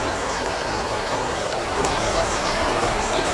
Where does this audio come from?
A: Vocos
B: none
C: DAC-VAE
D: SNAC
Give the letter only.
D